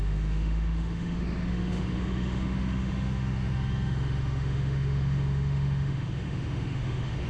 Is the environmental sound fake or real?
fake